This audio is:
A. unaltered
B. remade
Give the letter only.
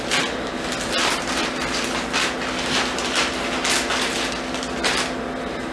A